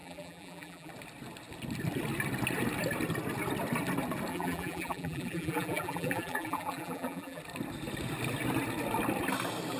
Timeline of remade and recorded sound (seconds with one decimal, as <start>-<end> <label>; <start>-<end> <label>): 0.0-0.9 remade; 0.9-4.3 recorded; 4.3-7.4 remade; 7.4-9.8 recorded